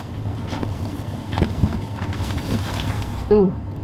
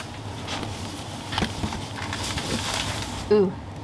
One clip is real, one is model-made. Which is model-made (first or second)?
first